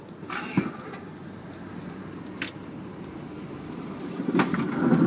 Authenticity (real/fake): real